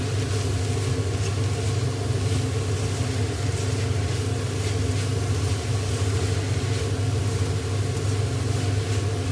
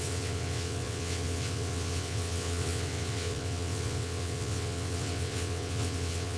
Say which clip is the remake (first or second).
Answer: second